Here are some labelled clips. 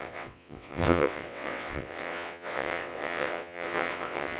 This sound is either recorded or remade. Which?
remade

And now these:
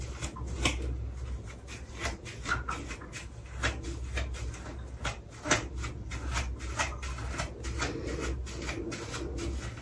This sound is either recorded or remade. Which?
recorded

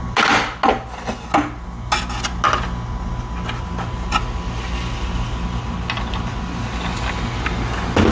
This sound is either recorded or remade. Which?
recorded